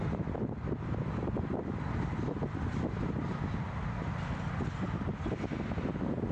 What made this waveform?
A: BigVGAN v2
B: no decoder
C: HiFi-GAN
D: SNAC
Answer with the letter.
B